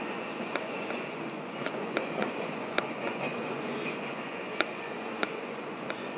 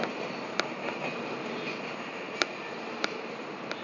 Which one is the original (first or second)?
second